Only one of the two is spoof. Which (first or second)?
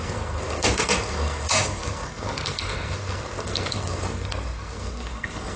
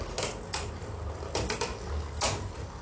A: first